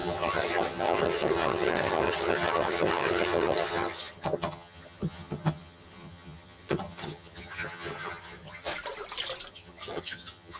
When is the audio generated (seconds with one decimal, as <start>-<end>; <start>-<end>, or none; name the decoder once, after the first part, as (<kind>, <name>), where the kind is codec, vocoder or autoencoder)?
0.0-8.7 (vocoder, HiFi-GAN); 9.5-10.6